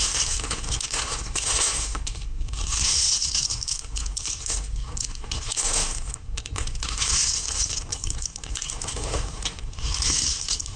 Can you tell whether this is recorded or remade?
remade